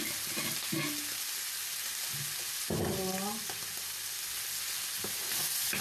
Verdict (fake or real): real